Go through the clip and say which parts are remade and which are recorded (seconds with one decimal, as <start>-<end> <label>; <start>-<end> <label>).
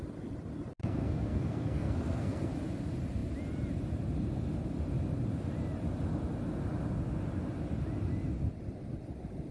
0.0-0.8 recorded; 0.8-2.5 remade; 2.5-9.5 recorded